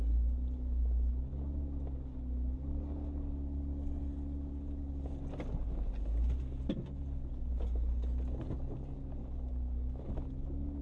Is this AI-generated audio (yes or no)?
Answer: no